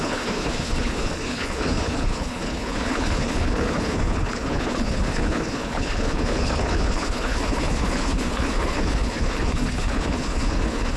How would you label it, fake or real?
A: fake